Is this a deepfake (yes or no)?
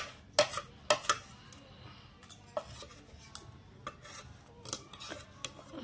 no